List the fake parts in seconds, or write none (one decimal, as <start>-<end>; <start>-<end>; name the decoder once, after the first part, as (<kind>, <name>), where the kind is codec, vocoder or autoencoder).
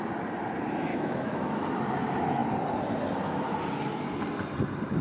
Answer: 0.9-1.8 (autoencoder, DAC-VAE)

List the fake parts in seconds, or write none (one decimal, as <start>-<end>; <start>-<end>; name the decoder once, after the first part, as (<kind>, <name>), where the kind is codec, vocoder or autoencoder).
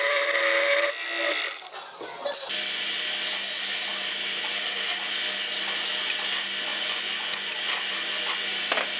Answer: 6.7-7.6 (vocoder, Vocos)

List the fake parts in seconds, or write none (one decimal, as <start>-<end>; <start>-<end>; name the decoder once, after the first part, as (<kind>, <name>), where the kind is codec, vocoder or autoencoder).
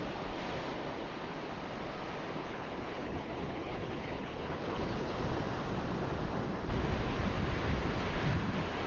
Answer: 2.4-5.2 (codec, HILCodec)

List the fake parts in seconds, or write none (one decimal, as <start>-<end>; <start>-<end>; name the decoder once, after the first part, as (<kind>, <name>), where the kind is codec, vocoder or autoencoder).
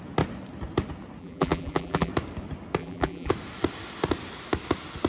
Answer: 1.2-2.1 (vocoder, BigVGAN v2); 2.8-3.3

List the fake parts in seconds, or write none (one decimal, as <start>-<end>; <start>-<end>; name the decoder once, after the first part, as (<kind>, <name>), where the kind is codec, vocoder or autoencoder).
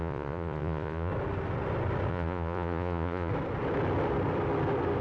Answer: 0.0-1.1 (vocoder, Vocos); 2.1-3.3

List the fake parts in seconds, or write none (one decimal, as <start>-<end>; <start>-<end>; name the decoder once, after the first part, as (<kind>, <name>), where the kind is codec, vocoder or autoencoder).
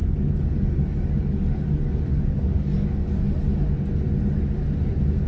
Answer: 0.0-3.2 (codec, DAC)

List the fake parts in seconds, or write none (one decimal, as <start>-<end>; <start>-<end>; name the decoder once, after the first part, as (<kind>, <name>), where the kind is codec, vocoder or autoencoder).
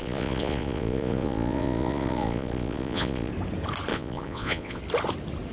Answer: 0.0-3.3 (vocoder, Vocos); 3.9-4.8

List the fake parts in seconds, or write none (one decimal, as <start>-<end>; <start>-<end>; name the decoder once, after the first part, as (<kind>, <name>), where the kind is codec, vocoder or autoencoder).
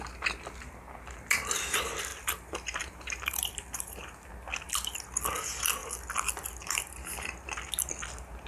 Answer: 2.1-4.3 (vocoder, BigVGAN v2)